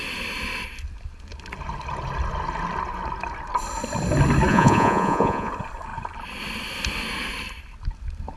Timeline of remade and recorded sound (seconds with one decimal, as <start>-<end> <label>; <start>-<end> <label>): 0.0-4.5 recorded; 4.5-5.5 remade; 5.5-8.4 recorded